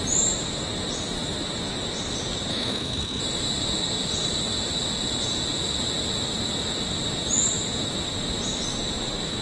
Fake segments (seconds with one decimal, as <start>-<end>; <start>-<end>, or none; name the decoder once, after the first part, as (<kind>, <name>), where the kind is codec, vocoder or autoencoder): 2.5-3.2 (autoencoder, DAC-VAE)